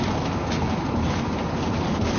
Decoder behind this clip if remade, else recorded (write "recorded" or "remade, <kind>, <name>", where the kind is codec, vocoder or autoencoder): recorded